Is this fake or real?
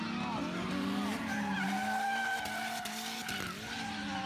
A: real